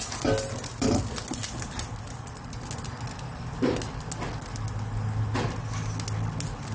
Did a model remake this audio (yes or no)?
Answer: no